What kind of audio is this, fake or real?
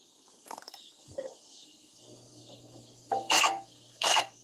fake